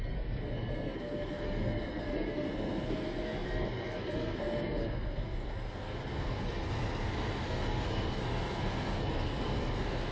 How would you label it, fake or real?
fake